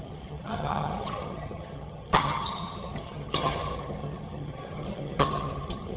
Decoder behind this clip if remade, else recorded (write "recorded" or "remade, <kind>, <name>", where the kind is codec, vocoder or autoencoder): remade, vocoder, HiFi-GAN